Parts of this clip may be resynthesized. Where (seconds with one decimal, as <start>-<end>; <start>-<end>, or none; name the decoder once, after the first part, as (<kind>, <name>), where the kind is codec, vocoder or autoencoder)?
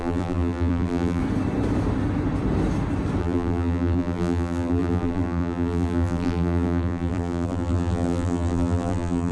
0.0-1.2 (vocoder, BigVGAN v2); 3.2-9.3